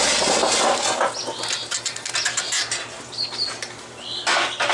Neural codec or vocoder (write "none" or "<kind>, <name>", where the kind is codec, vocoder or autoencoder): none